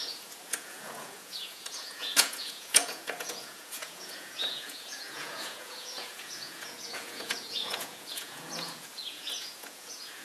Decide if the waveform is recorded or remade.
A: remade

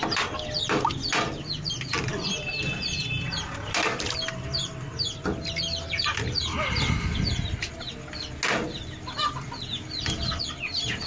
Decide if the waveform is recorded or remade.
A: recorded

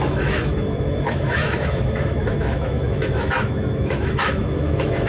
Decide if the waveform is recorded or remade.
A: remade